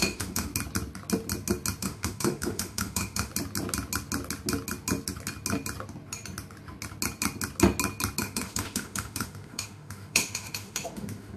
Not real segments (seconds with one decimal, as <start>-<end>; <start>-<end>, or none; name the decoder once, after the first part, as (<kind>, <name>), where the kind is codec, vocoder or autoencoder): 0.0-0.5 (autoencoder, DAC-VAE); 1.8-3.3; 8.2-11.4